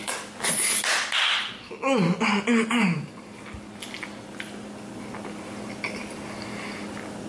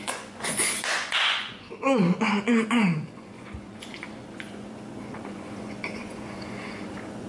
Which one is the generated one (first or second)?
second